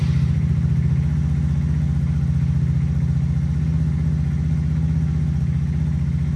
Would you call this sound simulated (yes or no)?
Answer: no